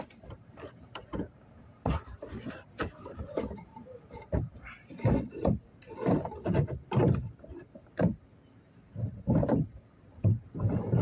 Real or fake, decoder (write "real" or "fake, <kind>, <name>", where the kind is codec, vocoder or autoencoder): fake, vocoder, BigVGAN v2